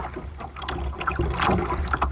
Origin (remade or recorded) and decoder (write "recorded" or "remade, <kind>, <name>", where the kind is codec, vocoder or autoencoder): recorded